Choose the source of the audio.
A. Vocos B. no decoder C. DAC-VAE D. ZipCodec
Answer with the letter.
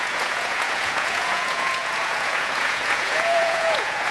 A